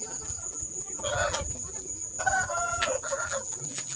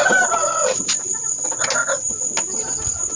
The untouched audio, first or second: second